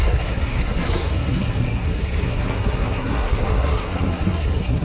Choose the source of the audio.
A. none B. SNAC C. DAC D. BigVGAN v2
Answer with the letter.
B